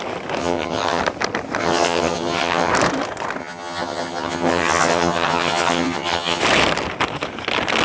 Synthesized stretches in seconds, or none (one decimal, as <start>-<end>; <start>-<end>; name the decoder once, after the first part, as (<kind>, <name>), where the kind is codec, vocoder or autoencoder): 0.4-1.0 (vocoder, HiFi-GAN); 1.6-2.7; 3.4-6.4